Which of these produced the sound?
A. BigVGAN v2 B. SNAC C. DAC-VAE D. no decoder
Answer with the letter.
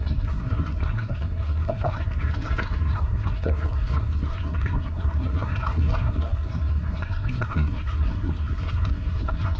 B